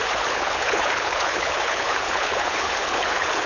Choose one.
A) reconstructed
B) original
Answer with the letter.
A